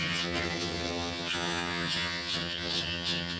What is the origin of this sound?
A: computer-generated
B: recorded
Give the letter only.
A